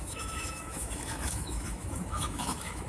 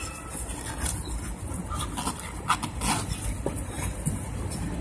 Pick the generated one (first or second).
first